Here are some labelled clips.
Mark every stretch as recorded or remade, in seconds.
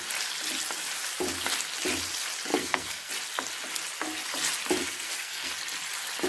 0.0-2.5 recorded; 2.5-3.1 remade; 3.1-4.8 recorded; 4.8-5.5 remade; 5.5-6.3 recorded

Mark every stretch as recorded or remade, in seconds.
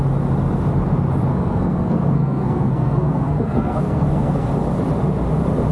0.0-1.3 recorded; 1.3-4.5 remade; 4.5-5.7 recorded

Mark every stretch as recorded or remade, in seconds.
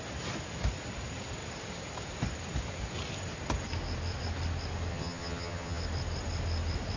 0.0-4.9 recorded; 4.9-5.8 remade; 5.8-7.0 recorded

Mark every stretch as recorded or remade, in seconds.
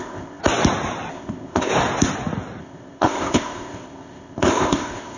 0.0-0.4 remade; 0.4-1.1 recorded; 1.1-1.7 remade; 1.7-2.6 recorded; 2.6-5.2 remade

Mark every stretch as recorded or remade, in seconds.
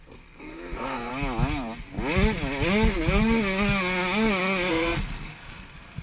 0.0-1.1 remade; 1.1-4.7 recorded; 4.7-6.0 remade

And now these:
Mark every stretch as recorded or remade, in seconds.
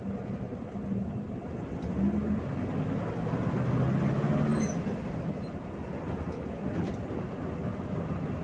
0.0-8.4 recorded